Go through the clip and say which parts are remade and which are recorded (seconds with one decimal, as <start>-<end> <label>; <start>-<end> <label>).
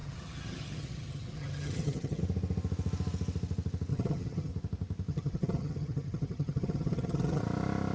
0.0-2.2 remade; 2.2-3.9 recorded; 3.9-4.5 remade; 4.5-5.1 recorded; 5.1-7.4 remade; 7.4-7.9 recorded